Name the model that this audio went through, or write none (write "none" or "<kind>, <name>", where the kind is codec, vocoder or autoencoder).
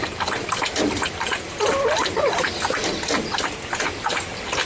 none